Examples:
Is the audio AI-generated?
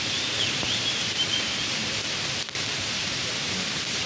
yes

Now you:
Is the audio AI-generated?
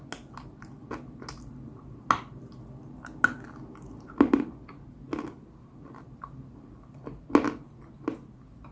no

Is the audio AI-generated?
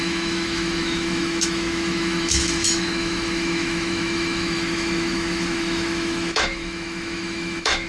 yes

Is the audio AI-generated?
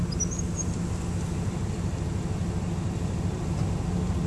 no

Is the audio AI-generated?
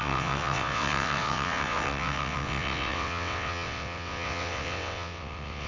yes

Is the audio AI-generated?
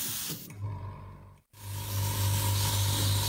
no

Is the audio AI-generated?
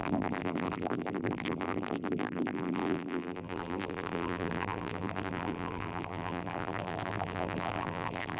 yes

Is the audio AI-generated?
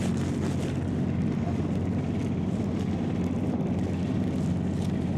no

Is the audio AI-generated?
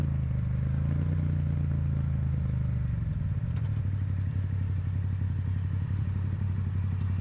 no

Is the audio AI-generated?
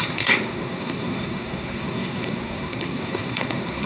yes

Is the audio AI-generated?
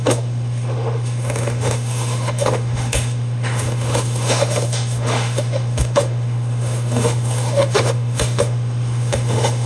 yes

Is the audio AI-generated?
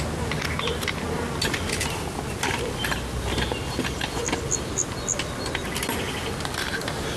no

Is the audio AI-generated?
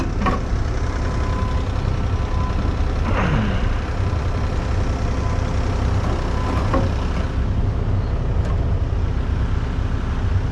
no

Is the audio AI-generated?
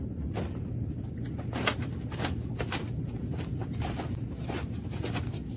no